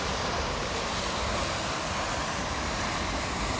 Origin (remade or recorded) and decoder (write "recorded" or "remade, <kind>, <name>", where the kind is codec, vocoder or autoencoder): recorded